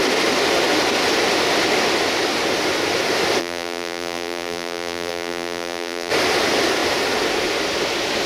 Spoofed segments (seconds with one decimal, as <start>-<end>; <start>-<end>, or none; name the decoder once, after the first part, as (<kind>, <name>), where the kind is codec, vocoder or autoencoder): 3.4-6.1 (vocoder, BigVGAN v2)